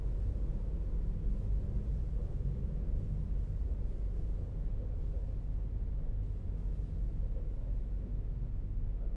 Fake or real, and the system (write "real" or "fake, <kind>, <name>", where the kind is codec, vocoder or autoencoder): real